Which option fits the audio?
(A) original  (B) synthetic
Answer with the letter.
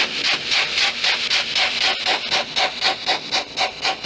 A